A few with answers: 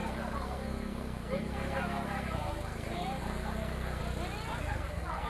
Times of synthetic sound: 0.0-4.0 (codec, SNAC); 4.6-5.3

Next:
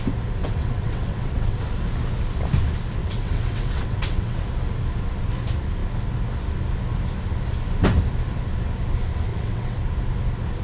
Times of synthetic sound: 0.4-1.6 (vocoder, WaveNeXt); 3.0-4.4; 9.3-9.8

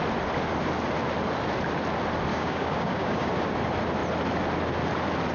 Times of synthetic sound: 2.3-3.3 (codec, DAC)

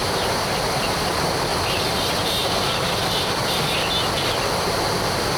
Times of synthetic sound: 0.0-1.1 (vocoder, BigVGAN v2); 1.5-3.1